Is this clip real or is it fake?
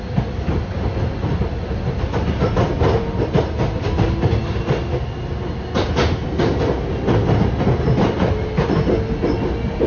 real